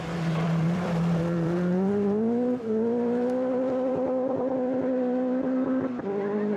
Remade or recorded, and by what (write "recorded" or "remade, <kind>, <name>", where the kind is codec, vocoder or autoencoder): remade, vocoder, BigVGAN v2